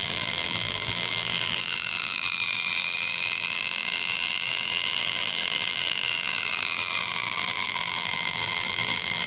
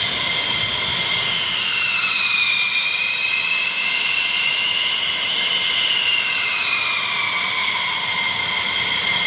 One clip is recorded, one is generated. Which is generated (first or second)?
first